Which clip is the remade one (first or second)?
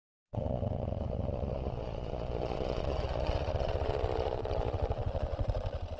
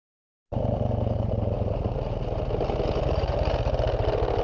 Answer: first